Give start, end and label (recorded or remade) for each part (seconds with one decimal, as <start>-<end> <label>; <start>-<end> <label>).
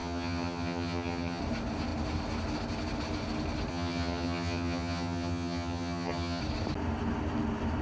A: 0.0-1.4 remade; 1.4-3.7 recorded; 3.7-6.4 remade; 6.4-7.8 recorded